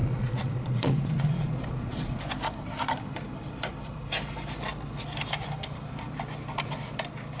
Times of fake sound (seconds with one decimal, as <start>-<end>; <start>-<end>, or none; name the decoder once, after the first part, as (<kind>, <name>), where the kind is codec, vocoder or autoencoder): 0.0-2.2 (vocoder, Vocos)